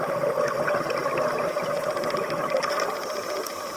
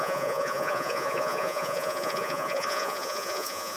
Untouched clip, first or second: first